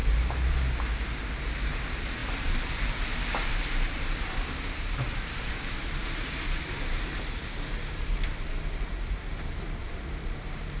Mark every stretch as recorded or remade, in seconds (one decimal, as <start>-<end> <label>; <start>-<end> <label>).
0.0-1.4 recorded; 1.4-10.8 remade